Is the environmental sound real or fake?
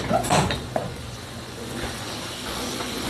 fake